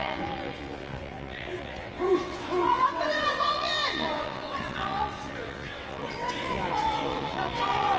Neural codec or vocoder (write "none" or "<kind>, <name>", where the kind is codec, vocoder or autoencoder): vocoder, WaveNeXt